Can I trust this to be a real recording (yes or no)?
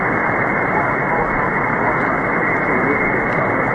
yes